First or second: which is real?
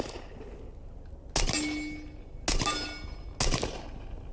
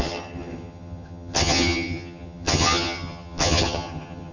first